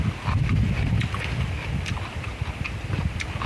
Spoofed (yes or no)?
no